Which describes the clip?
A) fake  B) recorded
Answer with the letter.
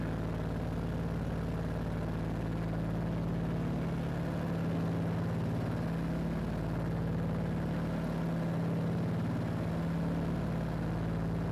B